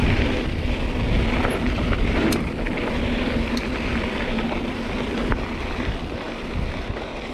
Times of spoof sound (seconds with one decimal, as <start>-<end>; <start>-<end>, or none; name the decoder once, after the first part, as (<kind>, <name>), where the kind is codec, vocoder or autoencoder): none